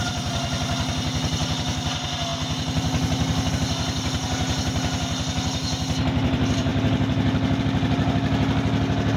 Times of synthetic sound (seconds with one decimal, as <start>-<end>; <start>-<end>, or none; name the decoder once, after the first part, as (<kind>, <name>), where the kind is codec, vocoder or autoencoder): none